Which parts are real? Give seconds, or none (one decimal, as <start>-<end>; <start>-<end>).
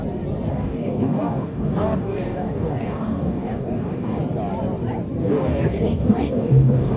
0.0-0.5; 4.2-5.2